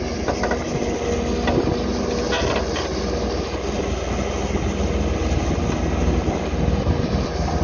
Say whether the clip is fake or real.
real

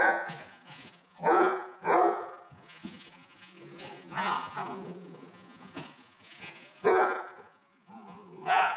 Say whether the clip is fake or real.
fake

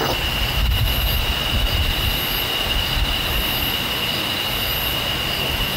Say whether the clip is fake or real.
real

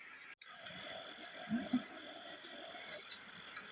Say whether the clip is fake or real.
real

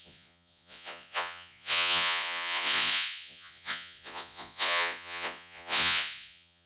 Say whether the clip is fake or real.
fake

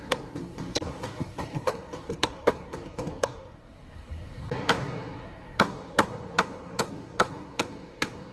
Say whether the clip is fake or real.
fake